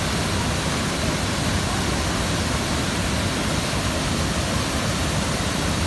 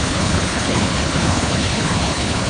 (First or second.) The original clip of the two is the first